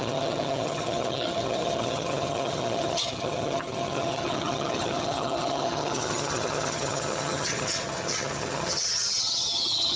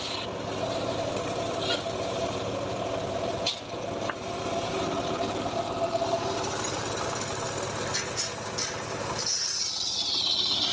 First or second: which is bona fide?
second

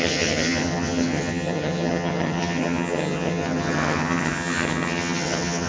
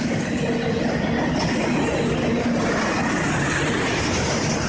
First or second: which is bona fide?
second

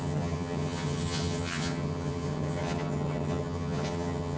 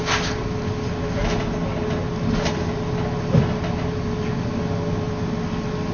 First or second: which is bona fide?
second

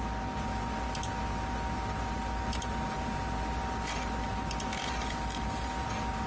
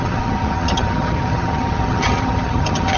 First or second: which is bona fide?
first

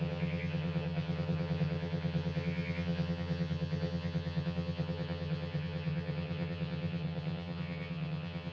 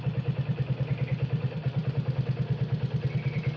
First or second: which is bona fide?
second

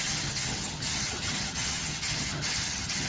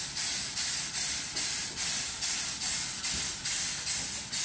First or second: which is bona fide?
second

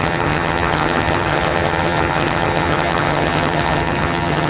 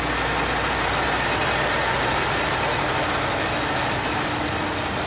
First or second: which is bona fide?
second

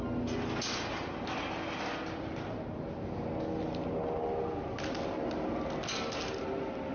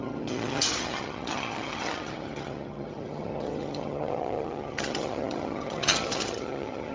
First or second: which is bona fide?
first